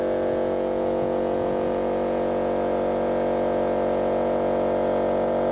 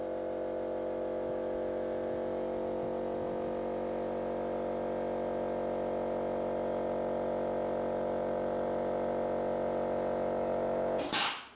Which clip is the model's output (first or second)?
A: first